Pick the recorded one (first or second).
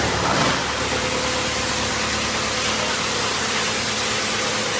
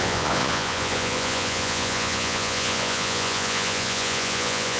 first